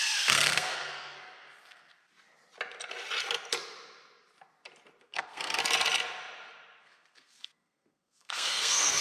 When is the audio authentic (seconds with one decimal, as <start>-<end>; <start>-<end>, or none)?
2.1-5.0; 5.6-6.8